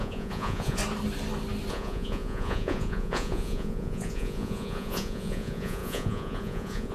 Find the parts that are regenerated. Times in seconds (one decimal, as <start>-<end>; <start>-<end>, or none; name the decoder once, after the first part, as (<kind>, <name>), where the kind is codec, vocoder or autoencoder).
0.0-0.8 (vocoder, Vocos); 1.7-6.9